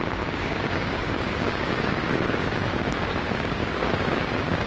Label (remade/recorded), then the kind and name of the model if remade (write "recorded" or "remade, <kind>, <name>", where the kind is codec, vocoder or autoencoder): remade, codec, DAC